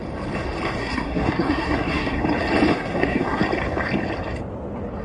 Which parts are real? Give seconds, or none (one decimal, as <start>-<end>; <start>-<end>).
0.0-0.8; 2.2-2.7; 3.4-5.0